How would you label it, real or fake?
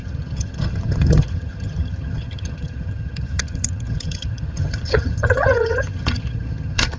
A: fake